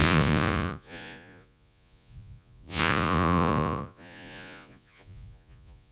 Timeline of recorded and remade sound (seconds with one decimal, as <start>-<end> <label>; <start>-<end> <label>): 0.0-5.9 remade